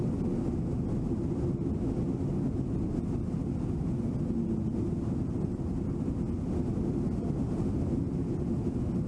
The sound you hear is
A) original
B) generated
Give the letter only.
A